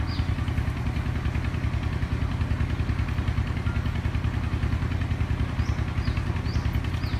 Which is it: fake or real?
real